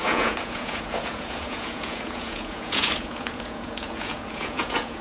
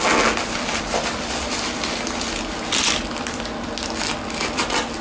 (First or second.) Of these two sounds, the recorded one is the second